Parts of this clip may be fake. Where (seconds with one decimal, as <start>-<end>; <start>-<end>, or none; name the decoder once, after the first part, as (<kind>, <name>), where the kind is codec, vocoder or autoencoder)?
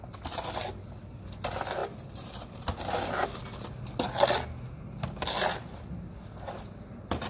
none